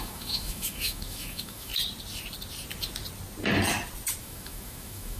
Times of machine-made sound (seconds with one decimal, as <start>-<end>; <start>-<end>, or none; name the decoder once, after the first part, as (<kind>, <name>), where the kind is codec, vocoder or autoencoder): 0.0-1.7 (autoencoder, DAC-VAE); 4.2-5.2